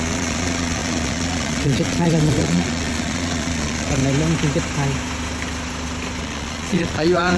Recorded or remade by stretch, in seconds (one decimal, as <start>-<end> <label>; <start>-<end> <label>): 0.0-4.0 remade; 4.0-6.2 recorded; 6.2-7.4 remade